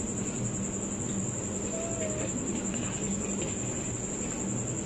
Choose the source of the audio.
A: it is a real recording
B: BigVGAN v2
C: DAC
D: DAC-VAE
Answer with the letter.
A